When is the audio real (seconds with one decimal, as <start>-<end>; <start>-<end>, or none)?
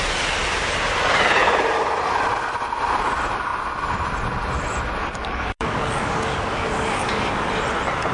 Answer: 0.0-5.0; 7.4-8.1